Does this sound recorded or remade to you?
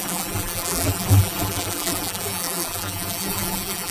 remade